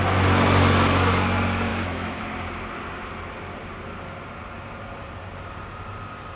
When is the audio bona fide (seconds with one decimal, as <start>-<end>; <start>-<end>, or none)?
0.0-1.7; 2.2-6.4